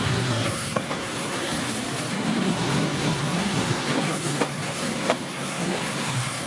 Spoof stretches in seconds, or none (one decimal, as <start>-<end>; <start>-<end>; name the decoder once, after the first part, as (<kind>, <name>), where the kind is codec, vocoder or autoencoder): 0.0-1.6 (codec, SNAC); 2.1-6.5